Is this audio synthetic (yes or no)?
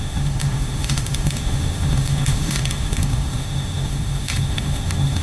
yes